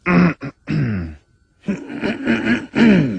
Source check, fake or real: real